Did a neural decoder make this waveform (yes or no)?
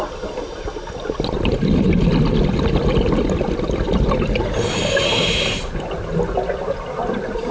no